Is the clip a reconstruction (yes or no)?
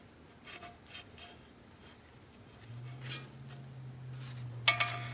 no